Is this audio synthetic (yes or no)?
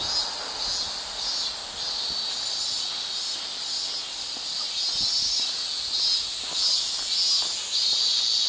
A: no